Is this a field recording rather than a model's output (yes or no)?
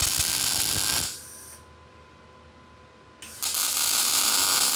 yes